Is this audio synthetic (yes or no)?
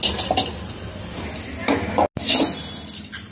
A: no